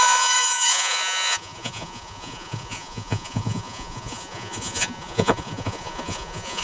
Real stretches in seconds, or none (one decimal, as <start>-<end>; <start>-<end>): none